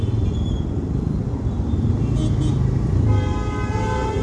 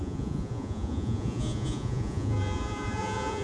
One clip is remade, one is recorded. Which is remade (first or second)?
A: second